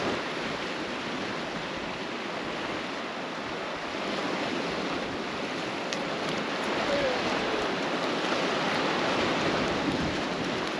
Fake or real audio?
real